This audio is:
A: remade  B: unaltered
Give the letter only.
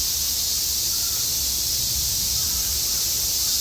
A